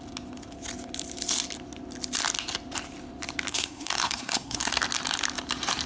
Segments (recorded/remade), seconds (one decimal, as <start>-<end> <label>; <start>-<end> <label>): 0.0-3.5 recorded; 3.5-4.7 remade; 4.7-5.9 recorded